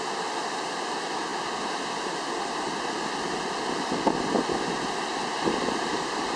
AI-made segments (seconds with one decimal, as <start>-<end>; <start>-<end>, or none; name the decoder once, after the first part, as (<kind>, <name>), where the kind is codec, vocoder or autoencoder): none